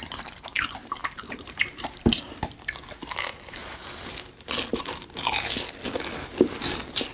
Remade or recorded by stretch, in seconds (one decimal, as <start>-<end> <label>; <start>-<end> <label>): 0.0-1.0 recorded; 1.0-2.4 remade; 2.4-4.7 recorded; 4.7-5.5 remade; 5.5-7.1 recorded